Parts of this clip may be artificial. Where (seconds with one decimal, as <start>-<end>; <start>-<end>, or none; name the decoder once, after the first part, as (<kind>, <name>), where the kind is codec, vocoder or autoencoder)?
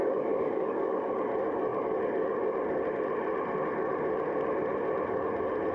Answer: 0.0-1.1 (codec, DAC)